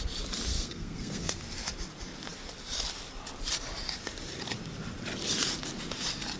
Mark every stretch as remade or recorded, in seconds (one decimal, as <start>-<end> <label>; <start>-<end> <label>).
0.0-0.5 recorded; 0.5-1.4 remade; 1.4-6.4 recorded